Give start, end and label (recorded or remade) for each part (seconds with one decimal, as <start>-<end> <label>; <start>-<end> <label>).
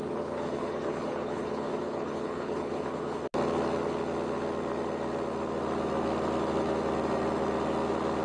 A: 0.0-3.2 remade; 3.2-8.2 recorded